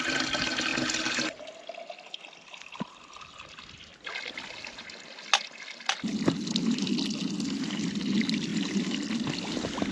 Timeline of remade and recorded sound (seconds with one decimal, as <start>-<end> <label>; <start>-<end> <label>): 0.0-9.9 recorded